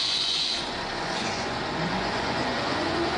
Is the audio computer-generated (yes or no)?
yes